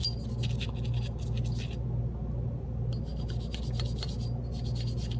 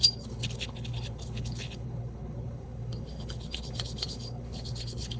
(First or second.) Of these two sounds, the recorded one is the first